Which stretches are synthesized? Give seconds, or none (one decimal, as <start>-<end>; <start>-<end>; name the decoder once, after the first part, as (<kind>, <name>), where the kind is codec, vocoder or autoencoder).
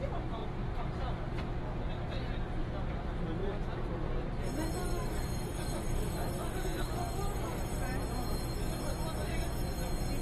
4.8-7.6 (codec, DAC)